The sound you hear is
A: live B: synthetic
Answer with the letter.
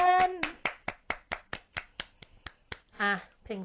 A